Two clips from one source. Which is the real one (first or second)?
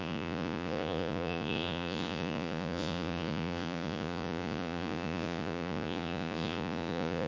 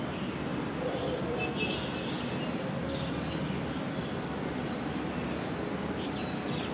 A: second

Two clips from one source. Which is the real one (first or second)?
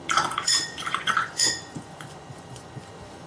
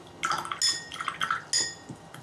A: second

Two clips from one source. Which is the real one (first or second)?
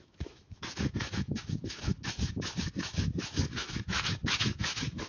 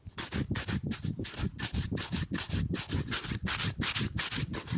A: second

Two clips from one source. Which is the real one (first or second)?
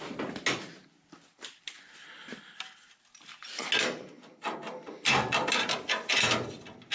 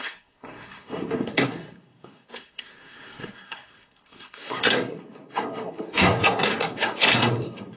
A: first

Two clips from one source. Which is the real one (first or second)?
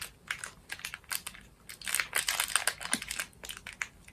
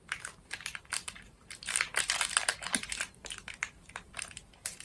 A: first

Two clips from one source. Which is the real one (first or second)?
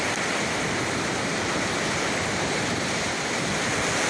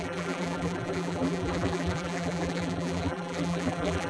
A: first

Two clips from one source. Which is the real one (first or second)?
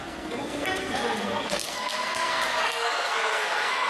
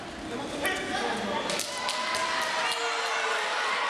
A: second